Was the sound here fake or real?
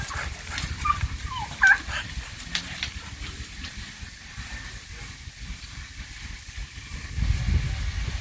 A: real